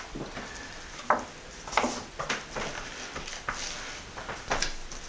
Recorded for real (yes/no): yes